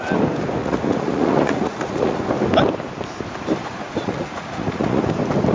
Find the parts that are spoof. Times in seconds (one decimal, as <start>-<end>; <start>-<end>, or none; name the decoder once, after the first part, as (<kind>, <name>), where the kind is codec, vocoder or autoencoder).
0.6-2.2 (vocoder, Vocos); 3.6-5.0